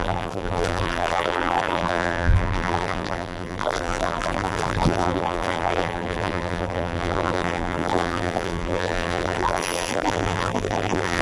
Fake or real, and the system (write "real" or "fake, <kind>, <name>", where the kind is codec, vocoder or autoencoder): fake, vocoder, BigVGAN v2